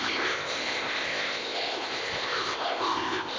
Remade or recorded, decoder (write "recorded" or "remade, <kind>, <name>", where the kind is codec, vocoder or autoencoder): remade, codec, ZipCodec